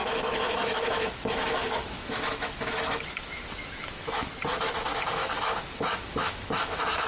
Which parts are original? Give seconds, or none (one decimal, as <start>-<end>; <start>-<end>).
4.3-5.2